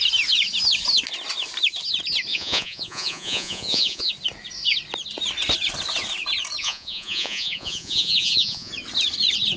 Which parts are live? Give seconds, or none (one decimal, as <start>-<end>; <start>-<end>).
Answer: 0.0-2.3; 4.1-6.6; 8.7-9.6